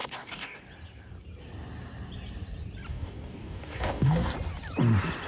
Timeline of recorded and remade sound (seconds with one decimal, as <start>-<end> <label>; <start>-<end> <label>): 0.0-0.6 remade; 0.6-2.9 recorded; 2.9-4.3 remade; 4.3-5.3 recorded